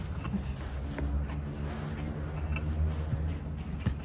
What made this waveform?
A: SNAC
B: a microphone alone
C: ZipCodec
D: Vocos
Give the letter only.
B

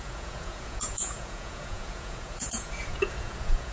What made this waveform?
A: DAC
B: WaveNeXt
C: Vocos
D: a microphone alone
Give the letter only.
C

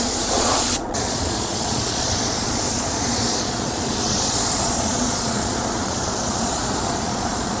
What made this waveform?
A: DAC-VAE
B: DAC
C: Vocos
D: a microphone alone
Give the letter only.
C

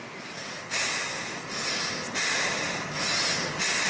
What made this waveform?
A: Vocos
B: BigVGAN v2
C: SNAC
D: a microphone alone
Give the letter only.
D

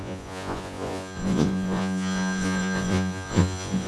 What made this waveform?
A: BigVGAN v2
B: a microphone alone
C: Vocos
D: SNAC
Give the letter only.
C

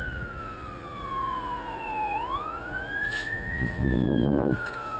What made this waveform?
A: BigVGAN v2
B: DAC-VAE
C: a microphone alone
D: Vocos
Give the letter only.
D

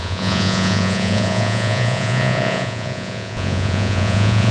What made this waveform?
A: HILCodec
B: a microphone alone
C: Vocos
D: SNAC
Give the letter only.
C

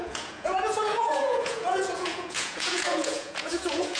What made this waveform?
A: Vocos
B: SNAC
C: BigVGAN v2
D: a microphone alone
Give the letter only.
A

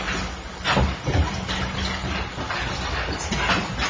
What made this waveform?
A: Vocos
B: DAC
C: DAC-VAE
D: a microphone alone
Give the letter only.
D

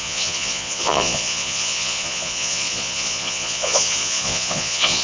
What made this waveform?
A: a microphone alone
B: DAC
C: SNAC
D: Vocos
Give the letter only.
D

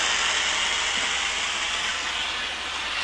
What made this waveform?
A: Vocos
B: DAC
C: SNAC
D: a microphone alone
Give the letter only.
D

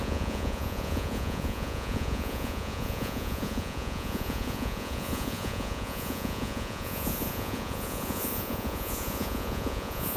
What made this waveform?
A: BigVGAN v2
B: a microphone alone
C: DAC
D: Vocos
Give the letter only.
D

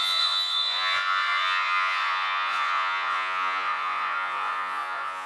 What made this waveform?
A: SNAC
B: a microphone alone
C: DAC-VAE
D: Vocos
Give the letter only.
D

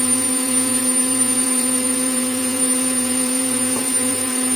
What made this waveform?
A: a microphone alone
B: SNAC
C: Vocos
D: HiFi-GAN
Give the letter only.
C